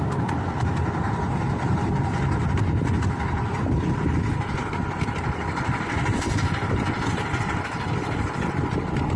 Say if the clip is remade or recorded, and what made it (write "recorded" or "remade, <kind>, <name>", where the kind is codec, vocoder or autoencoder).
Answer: recorded